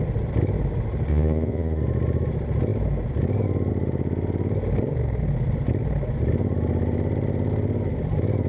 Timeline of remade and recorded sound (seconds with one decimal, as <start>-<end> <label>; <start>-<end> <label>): 0.0-1.1 recorded; 1.1-1.8 remade; 1.8-8.5 recorded